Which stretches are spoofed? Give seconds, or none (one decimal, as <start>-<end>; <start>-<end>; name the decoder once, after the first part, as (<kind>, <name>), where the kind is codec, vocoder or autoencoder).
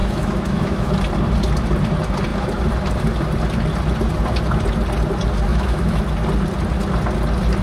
0.0-0.9 (autoencoder, DAC-VAE); 5.5-6.0